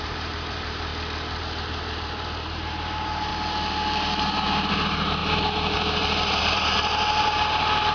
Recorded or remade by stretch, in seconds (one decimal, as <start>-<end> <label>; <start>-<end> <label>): 0.0-0.9 remade; 0.9-1.4 recorded; 1.4-3.3 remade; 3.3-4.7 recorded; 4.7-7.9 remade